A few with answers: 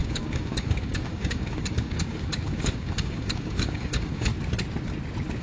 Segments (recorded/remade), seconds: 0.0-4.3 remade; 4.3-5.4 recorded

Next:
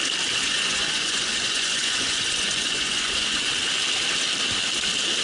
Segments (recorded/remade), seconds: 0.0-0.4 recorded; 0.4-3.5 remade; 3.5-5.2 recorded

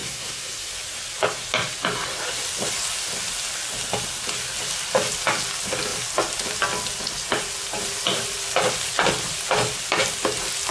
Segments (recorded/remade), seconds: 0.0-0.7 remade; 0.7-10.7 recorded

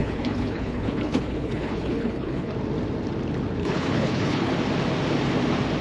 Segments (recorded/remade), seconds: 0.0-2.5 remade; 2.5-3.6 recorded; 3.6-4.5 remade; 4.5-5.8 recorded